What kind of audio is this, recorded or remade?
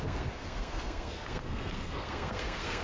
remade